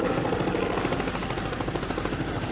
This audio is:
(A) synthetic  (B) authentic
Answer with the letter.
B